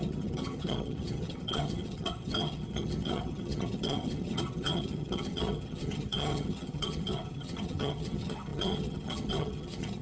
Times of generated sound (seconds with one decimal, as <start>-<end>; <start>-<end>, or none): 0.0-10.0